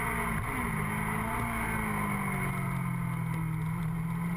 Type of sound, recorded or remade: recorded